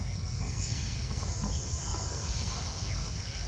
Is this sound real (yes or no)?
no